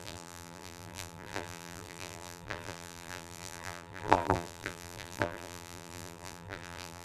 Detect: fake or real fake